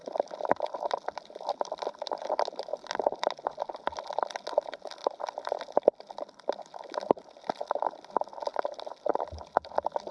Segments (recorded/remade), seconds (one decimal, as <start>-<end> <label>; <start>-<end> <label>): 0.0-0.9 remade; 0.9-2.7 recorded; 2.7-3.2 remade; 3.2-5.0 recorded; 5.0-8.1 remade; 8.1-8.5 recorded; 8.5-9.1 remade; 9.1-10.1 recorded